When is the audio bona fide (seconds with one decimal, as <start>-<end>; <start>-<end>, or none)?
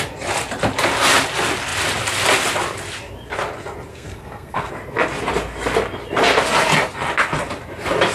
0.0-3.9; 4.7-8.1